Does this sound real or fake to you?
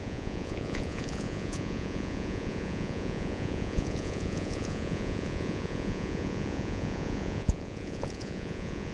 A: fake